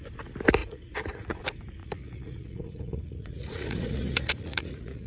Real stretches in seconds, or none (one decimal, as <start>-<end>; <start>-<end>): 0.0-0.6; 1.4-1.8